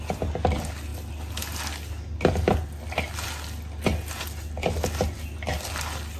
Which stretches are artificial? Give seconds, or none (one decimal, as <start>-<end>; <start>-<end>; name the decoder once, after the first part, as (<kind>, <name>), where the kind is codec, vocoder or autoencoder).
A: none